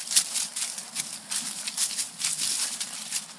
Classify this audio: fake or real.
real